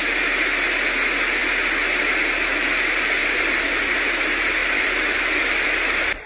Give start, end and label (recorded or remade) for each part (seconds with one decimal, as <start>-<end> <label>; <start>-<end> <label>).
0.0-3.2 recorded; 3.2-3.9 remade; 3.9-4.6 recorded; 4.6-6.3 remade